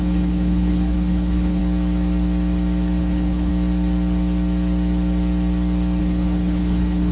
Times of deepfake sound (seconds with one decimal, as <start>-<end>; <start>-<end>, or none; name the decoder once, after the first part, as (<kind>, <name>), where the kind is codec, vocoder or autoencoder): 0.0-1.6 (codec, HILCodec); 3.0-3.5; 6.0-7.1